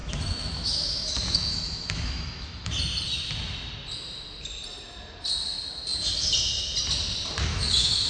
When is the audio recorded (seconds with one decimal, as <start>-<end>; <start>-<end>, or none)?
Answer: 2.7-7.5